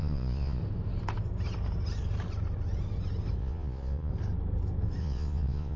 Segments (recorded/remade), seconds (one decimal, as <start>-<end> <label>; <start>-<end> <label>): 0.0-0.6 remade; 0.6-3.4 recorded; 3.4-4.1 remade; 4.1-5.0 recorded; 5.0-5.8 remade